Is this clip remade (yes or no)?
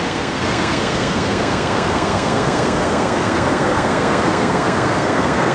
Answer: yes